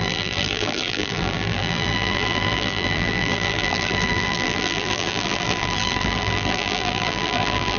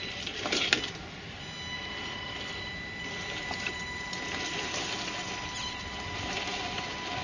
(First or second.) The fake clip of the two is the first